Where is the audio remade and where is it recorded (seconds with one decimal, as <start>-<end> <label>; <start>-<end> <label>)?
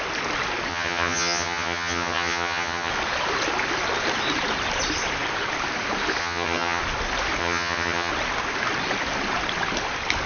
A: 0.0-0.7 recorded; 0.7-2.9 remade; 2.9-6.2 recorded; 6.2-6.8 remade; 6.8-7.4 recorded; 7.4-8.1 remade; 8.1-10.3 recorded